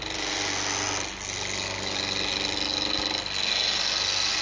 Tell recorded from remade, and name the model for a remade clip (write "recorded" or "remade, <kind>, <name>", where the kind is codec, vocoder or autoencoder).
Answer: recorded